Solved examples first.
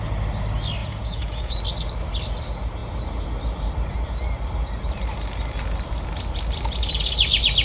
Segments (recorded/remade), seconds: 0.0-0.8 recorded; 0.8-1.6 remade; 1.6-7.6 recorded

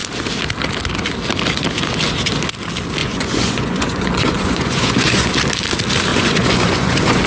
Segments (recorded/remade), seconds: 0.0-3.0 recorded; 3.0-5.3 remade; 5.3-6.1 recorded; 6.1-7.3 remade